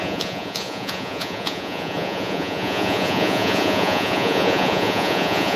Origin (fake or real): fake